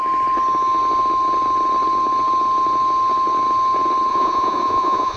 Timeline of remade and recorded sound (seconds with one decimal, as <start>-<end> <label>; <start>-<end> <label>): 0.0-4.1 recorded; 4.1-5.2 remade

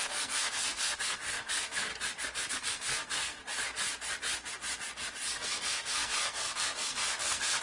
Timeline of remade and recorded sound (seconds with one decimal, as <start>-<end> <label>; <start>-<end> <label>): 0.0-1.9 remade; 1.9-2.5 recorded; 2.5-3.4 remade; 3.4-5.3 recorded; 5.3-7.6 remade

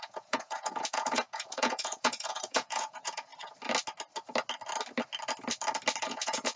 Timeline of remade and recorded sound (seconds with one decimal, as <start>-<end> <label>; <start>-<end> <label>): 0.0-3.3 remade; 3.3-6.0 recorded; 6.0-6.6 remade

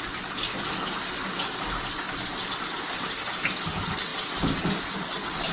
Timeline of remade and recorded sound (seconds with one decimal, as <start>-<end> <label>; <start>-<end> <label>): 0.0-5.5 recorded

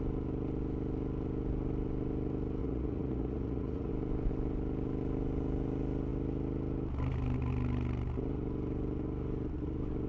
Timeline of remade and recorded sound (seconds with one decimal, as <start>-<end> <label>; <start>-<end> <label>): 0.0-2.6 recorded; 2.6-3.9 remade; 3.9-10.1 recorded